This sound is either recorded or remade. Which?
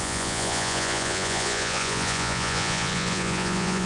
remade